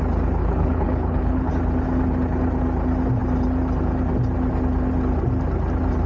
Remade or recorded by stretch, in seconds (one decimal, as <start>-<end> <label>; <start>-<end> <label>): 0.0-0.4 recorded; 0.4-1.5 remade; 1.5-6.1 recorded